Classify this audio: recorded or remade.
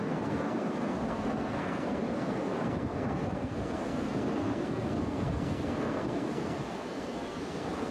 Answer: remade